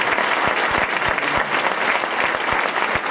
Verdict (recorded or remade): recorded